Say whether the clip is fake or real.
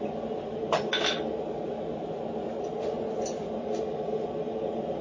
real